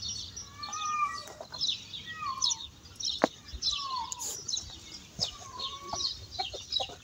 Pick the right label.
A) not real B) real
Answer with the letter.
B